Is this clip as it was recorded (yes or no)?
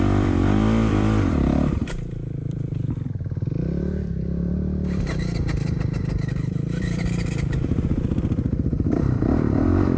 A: no